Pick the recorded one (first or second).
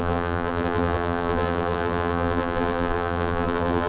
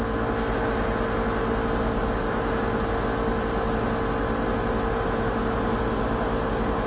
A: second